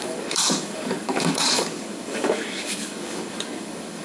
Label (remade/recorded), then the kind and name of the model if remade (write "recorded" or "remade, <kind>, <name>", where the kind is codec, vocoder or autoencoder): remade, codec, DAC